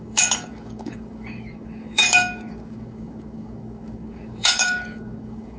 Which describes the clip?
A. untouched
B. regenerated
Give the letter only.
B